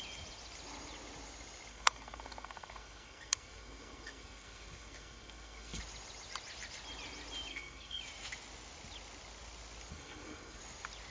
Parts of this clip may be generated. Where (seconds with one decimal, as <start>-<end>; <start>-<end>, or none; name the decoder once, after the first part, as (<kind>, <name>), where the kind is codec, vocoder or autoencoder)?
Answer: 1.7-5.8 (codec, SNAC); 7.5-8.0; 9.9-10.6